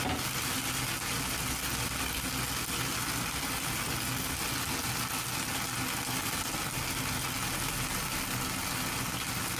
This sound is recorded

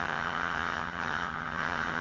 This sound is remade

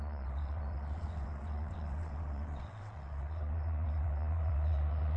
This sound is remade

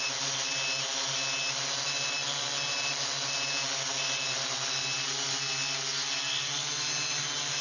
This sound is recorded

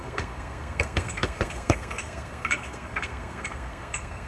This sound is remade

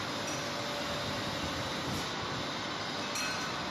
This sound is recorded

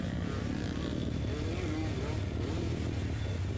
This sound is recorded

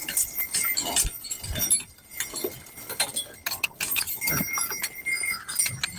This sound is recorded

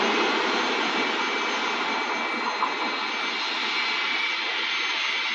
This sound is recorded